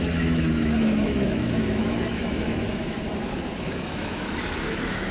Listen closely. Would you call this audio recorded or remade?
remade